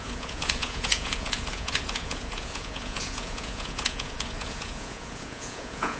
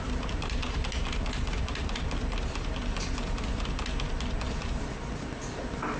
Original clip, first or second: second